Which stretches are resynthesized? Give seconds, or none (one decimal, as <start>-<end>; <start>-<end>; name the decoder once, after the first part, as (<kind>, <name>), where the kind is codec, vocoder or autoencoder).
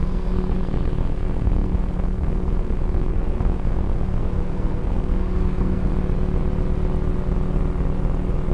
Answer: 0.0-5.9 (codec, SNAC)